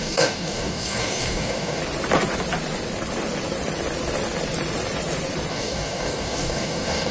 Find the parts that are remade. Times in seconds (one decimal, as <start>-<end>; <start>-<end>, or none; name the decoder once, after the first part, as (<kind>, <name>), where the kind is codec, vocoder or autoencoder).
0.0-1.8 (codec, DAC); 5.5-7.1